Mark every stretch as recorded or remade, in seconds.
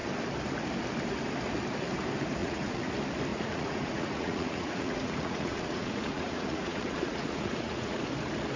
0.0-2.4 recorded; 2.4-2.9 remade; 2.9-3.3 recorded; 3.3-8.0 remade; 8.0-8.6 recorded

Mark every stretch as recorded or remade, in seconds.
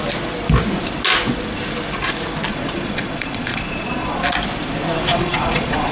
0.0-2.5 recorded; 2.5-4.2 remade; 4.2-5.1 recorded; 5.1-5.9 remade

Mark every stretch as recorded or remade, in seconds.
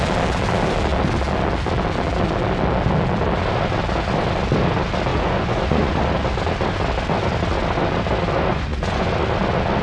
0.0-5.1 recorded; 5.1-6.0 remade; 6.0-8.5 recorded; 8.5-9.1 remade; 9.1-9.8 recorded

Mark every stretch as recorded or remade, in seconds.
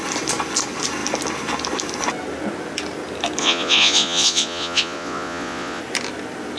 0.0-3.4 recorded; 3.4-5.8 remade; 5.8-6.6 recorded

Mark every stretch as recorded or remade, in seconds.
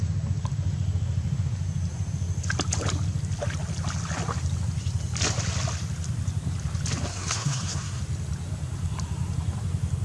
0.0-7.1 recorded; 7.1-8.0 remade; 8.0-10.0 recorded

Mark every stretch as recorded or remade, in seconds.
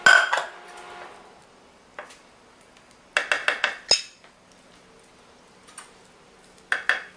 0.0-7.2 recorded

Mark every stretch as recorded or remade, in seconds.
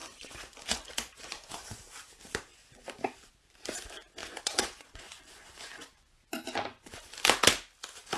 0.0-1.9 remade; 1.9-2.5 recorded; 2.5-3.3 remade; 3.3-4.2 recorded; 4.2-7.2 remade; 7.2-8.2 recorded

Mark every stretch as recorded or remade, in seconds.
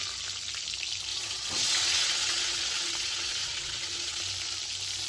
0.0-1.1 recorded; 1.1-4.2 remade; 4.2-5.1 recorded